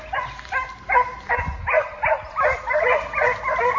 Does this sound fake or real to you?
real